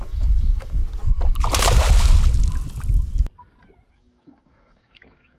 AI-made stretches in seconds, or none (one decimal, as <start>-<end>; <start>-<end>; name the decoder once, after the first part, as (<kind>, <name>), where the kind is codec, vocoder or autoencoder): 0.0-0.8 (codec, DAC); 3.9-5.4